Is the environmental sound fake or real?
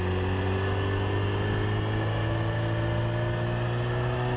real